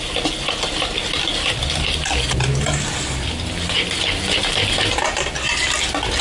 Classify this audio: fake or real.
real